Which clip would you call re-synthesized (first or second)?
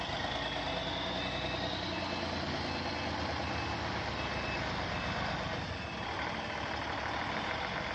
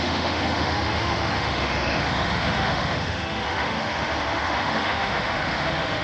second